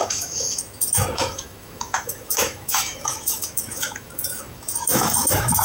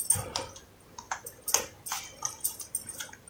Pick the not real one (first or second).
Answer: first